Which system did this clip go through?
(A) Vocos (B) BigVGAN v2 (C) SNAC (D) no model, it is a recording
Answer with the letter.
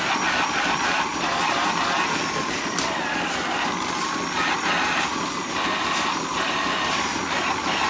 B